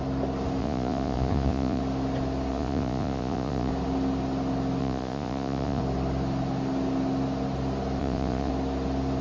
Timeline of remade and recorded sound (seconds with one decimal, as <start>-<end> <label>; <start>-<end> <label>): 0.0-0.6 recorded; 0.6-1.8 remade; 1.8-2.5 recorded; 2.5-3.7 remade; 3.7-4.8 recorded; 4.8-5.8 remade; 5.8-8.0 recorded; 8.0-8.5 remade; 8.5-9.2 recorded

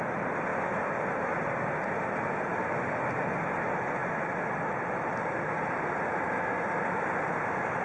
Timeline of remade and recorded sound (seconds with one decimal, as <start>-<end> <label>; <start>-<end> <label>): 0.0-7.8 recorded